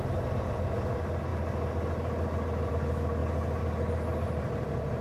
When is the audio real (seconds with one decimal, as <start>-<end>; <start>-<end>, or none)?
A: 0.0-5.0